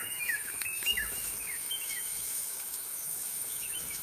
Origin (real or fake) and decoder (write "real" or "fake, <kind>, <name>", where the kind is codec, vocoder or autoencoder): fake, autoencoder, DAC-VAE